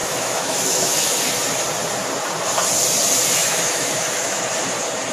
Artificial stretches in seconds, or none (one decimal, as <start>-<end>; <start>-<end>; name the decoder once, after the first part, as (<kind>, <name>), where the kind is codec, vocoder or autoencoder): 0.0-1.1 (autoencoder, DAC-VAE); 3.4-4.4